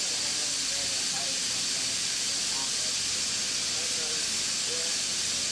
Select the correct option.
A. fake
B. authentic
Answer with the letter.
B